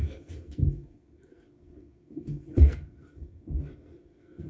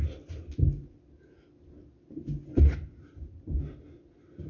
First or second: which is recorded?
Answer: second